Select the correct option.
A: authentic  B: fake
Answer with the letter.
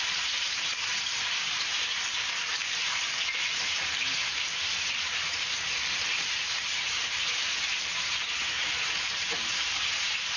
B